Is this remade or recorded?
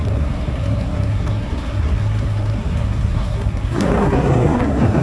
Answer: remade